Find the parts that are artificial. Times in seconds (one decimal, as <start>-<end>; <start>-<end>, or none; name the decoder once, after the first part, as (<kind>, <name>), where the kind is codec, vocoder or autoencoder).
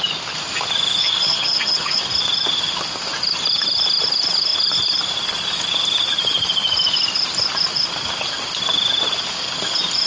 1.0-2.0 (vocoder, HiFi-GAN)